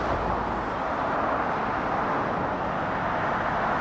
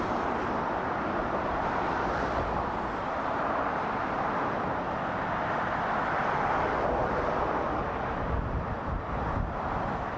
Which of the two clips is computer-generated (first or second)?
second